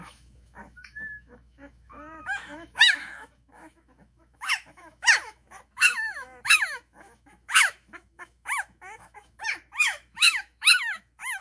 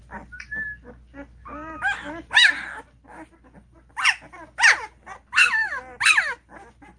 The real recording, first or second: second